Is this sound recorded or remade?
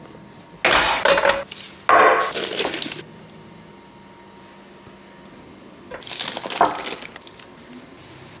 recorded